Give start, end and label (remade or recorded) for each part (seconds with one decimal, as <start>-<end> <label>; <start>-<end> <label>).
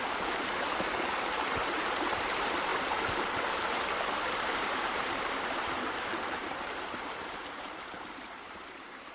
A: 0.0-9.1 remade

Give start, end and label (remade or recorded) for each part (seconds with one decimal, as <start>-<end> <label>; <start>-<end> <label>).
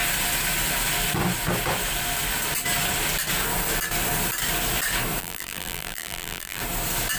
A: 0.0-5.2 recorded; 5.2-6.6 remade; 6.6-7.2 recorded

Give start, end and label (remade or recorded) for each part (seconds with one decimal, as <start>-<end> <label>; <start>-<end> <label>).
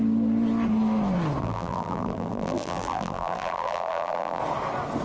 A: 0.0-1.4 recorded; 1.4-4.4 remade; 4.4-5.0 recorded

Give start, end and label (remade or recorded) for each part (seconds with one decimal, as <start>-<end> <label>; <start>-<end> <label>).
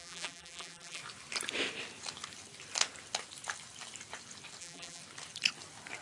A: 0.0-1.0 remade; 1.0-4.6 recorded; 4.6-5.0 remade; 5.0-6.0 recorded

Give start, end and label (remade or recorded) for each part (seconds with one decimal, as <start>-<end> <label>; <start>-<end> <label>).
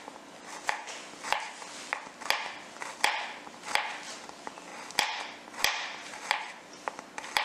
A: 0.0-7.4 recorded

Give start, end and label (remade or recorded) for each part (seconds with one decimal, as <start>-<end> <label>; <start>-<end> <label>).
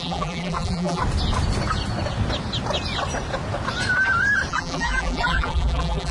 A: 0.0-1.0 remade; 1.0-4.5 recorded; 4.5-6.1 remade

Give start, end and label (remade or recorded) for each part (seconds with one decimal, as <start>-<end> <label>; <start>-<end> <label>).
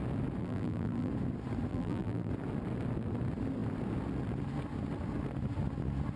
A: 0.0-0.4 recorded; 0.4-1.1 remade; 1.1-1.7 recorded; 1.7-2.3 remade; 2.3-6.2 recorded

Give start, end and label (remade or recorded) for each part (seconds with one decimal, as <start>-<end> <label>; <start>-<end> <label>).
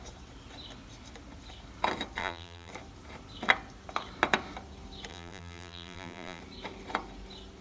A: 0.0-2.2 recorded; 2.2-2.7 remade; 2.7-5.1 recorded; 5.1-6.4 remade; 6.4-7.6 recorded